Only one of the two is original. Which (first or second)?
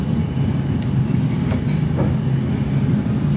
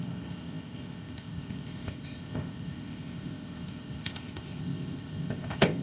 first